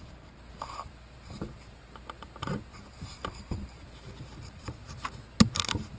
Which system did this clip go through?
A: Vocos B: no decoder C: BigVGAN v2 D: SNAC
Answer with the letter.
C